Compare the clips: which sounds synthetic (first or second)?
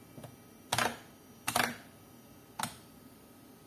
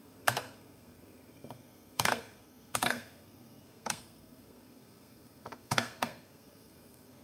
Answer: second